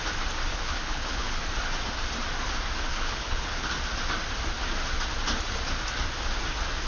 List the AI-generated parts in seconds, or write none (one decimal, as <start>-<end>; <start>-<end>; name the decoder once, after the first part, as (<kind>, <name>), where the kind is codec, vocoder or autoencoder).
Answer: 0.5-1.4 (codec, HILCodec); 2.9-3.7